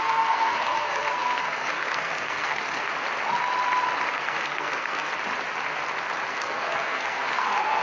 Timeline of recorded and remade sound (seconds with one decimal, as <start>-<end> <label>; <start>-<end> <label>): 0.0-2.9 remade; 2.9-4.1 recorded; 4.1-5.1 remade; 5.1-6.3 recorded; 6.3-7.8 remade